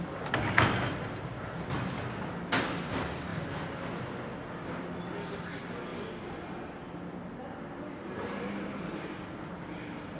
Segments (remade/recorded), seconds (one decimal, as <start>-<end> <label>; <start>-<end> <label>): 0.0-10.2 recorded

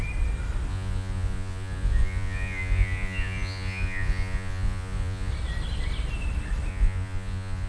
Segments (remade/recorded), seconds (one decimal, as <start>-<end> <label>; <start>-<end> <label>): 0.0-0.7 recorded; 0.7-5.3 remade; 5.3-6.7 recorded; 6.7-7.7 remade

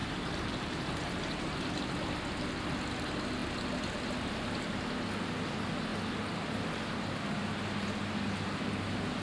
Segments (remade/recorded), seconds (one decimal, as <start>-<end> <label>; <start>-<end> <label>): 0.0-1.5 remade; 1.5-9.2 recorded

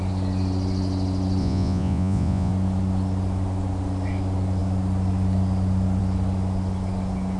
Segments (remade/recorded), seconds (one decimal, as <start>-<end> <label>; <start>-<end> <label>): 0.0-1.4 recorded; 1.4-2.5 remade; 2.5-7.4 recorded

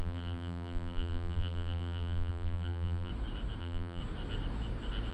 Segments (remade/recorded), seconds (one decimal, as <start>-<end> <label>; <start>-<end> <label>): 0.0-3.1 remade; 3.1-3.6 recorded; 3.6-4.0 remade; 4.0-5.1 recorded

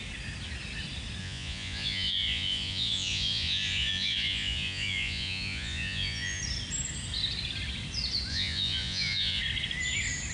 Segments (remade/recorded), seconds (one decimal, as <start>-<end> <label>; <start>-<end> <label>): 0.0-1.2 recorded; 1.2-6.4 remade; 6.4-8.3 recorded; 8.3-9.4 remade; 9.4-10.3 recorded

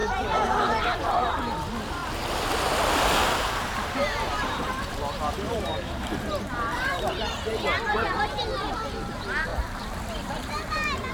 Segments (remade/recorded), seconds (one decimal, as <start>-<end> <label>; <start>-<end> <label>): 0.0-2.0 remade; 2.0-3.1 recorded; 3.1-7.5 remade; 7.5-8.6 recorded; 8.6-9.5 remade; 9.5-10.3 recorded; 10.3-11.1 remade